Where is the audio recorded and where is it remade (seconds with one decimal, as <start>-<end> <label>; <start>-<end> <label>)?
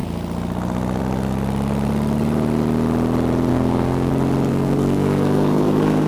0.0-3.5 recorded; 3.5-4.1 remade; 4.1-4.5 recorded; 4.5-6.1 remade